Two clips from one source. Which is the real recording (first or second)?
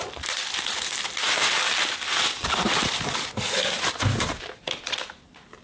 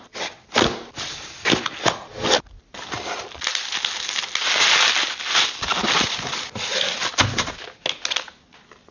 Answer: second